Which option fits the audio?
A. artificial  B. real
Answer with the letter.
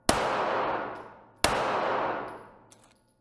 B